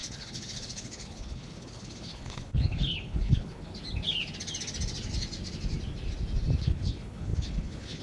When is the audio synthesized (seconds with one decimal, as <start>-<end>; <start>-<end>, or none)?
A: 0.0-3.7; 6.6-8.0